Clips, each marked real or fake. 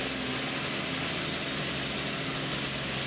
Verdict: real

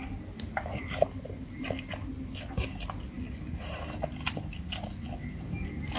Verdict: real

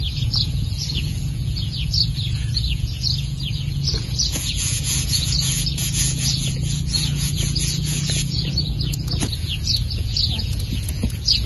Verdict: fake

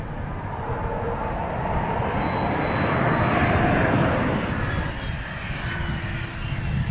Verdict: real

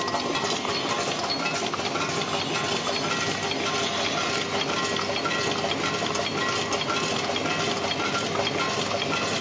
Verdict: real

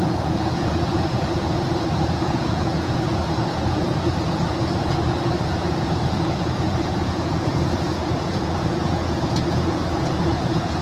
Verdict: fake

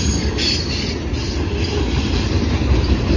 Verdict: real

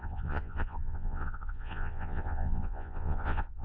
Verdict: fake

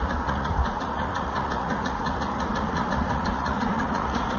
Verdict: fake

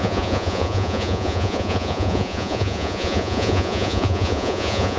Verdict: fake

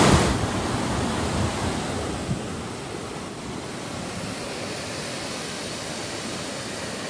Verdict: real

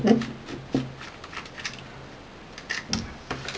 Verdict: real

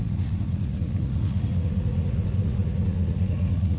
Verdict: fake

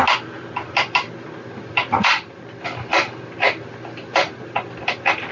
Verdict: real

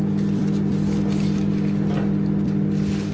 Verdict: real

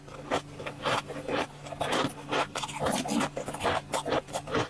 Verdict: real